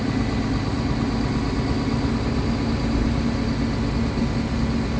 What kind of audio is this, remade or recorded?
recorded